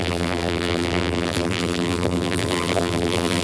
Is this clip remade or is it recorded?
remade